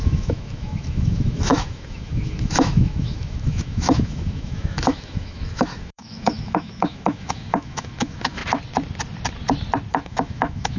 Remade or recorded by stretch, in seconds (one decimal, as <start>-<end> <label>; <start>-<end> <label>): 0.0-8.4 remade; 8.4-9.9 recorded; 9.9-10.8 remade